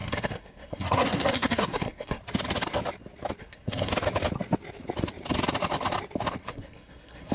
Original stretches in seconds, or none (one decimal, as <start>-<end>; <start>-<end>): 2.2-3.4; 3.9-6.4